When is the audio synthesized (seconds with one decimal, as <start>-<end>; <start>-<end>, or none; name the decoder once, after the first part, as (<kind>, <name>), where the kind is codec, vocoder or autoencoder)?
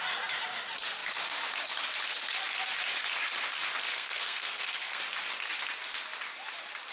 3.9-5.0 (codec, SNAC)